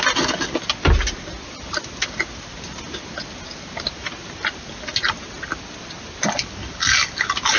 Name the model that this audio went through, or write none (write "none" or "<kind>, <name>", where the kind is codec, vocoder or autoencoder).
none